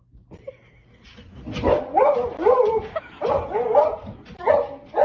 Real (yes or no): yes